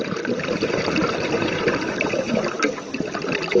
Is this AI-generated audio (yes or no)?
no